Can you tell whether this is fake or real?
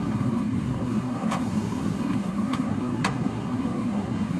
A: fake